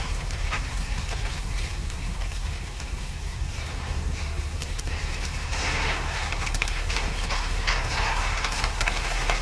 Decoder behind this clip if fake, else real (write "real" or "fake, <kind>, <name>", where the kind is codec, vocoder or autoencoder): fake, codec, SNAC